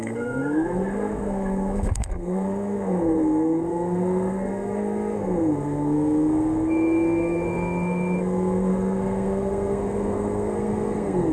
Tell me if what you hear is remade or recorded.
remade